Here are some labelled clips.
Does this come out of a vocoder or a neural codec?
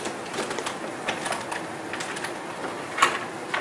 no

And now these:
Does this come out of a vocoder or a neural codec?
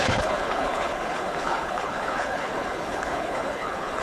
yes